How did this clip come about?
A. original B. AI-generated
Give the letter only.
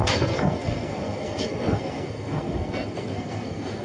B